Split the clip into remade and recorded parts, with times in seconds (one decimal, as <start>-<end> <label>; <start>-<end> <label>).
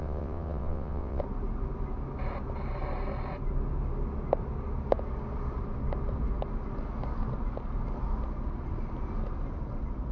0.0-1.2 remade; 1.2-10.1 recorded